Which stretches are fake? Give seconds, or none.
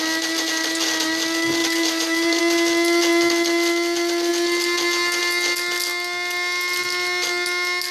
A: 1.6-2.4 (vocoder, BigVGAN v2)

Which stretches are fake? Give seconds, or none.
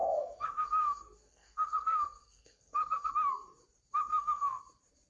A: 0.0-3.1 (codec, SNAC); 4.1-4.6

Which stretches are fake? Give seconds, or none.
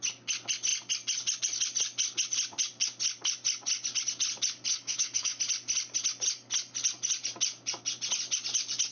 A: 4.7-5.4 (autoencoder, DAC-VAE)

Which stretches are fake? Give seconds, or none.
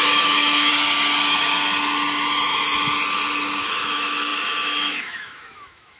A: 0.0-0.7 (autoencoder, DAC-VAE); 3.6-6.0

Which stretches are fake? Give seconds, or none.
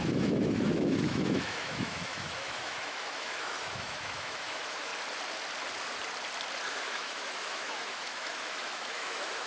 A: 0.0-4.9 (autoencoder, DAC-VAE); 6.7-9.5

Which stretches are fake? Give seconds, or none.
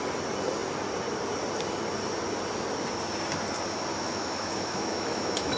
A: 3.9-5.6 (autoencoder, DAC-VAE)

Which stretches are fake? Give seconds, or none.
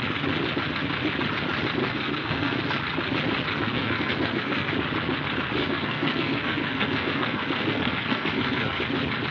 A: 1.8-2.6 (codec, SNAC); 3.5-4.7; 5.6-8.8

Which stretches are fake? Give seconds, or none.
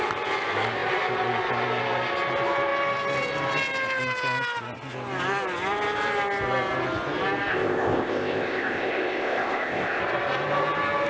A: 7.5-10.0 (codec, ZipCodec)